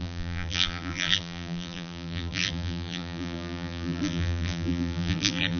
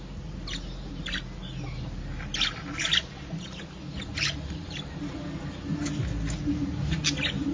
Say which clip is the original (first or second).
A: second